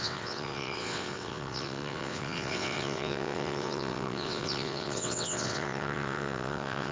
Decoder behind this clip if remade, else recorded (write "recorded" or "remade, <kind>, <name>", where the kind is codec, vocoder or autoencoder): remade, vocoder, WaveNeXt